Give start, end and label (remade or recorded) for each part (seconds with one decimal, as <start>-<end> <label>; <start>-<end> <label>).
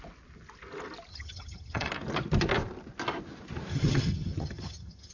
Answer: 0.0-1.1 recorded; 1.1-1.9 remade; 1.9-3.7 recorded; 3.7-5.1 remade